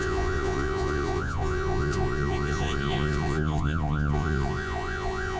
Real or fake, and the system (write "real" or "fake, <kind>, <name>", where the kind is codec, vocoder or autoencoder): fake, vocoder, Vocos